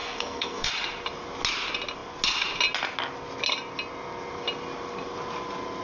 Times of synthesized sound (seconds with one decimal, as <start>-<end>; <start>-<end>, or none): 0.0-0.7